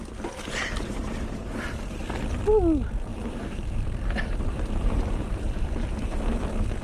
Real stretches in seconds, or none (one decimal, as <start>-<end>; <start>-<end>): 0.0-1.0; 2.0-3.1; 6.2-6.8